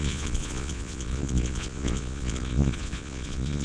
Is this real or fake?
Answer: fake